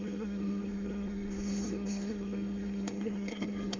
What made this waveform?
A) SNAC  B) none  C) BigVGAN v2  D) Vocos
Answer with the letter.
A